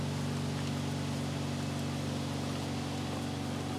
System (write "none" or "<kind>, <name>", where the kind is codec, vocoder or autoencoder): none